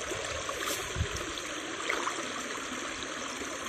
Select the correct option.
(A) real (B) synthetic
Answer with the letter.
A